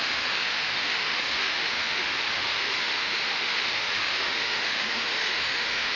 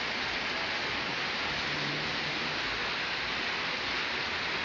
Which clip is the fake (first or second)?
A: first